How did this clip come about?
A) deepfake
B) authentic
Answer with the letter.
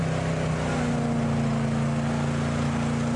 B